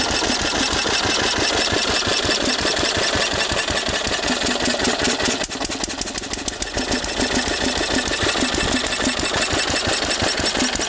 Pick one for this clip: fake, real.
real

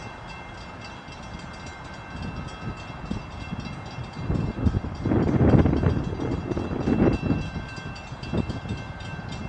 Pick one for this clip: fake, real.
real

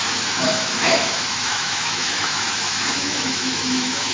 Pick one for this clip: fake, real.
fake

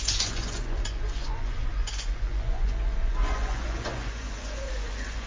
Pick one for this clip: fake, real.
fake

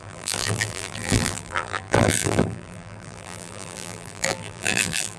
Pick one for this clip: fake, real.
fake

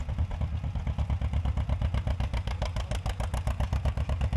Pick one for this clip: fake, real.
real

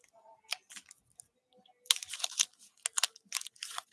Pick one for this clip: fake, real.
real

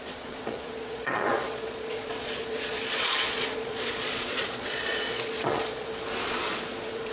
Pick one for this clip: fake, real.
fake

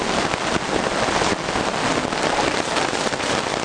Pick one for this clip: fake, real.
real